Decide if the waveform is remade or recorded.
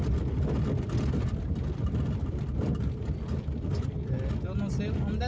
recorded